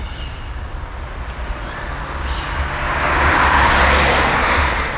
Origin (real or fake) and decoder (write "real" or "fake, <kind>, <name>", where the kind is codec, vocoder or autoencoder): real